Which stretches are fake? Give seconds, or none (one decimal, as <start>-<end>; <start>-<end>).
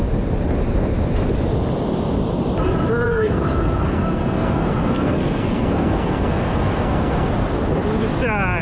3.1-7.3